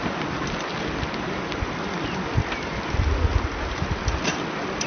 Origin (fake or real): real